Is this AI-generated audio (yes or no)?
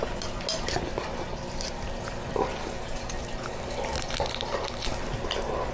no